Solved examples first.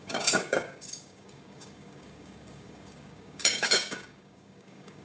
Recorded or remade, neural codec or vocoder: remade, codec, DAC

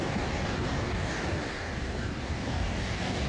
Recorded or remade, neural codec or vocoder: remade, codec, DAC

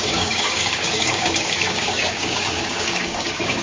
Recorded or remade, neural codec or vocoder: remade, codec, DAC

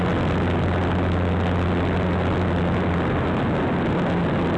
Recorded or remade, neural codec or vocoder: recorded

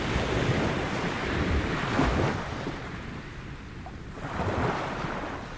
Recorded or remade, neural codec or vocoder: recorded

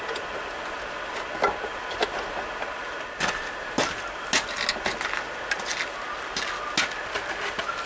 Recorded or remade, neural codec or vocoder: recorded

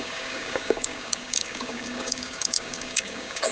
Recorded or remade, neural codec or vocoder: remade, codec, DAC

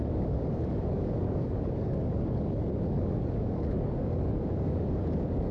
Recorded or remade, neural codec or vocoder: remade, codec, DAC